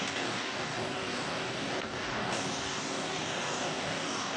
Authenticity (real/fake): fake